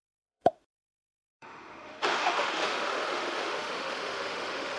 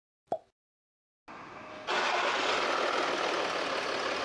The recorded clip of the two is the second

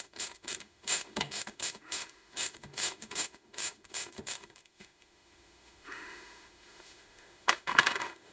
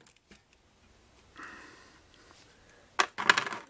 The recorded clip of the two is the second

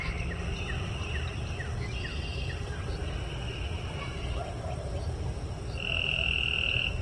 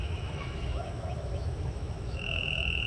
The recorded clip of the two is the first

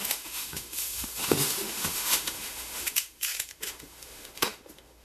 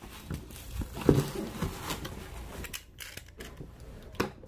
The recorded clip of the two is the second